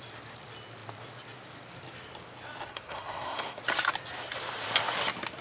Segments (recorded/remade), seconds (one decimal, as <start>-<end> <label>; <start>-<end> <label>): 0.0-2.7 recorded; 2.7-3.6 remade; 3.6-5.4 recorded